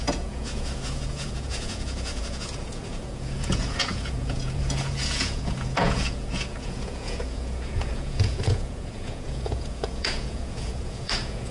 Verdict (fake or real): fake